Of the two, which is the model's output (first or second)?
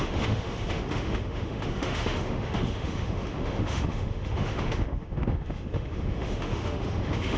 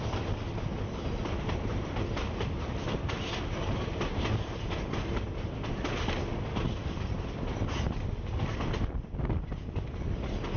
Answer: first